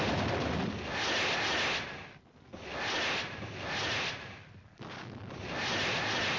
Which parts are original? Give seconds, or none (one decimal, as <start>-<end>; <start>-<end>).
0.0-6.4